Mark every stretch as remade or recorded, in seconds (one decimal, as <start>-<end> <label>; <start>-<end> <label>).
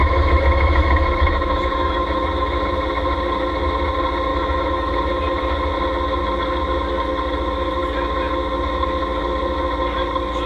0.0-2.6 remade; 2.6-4.3 recorded; 4.3-5.4 remade; 5.4-10.5 recorded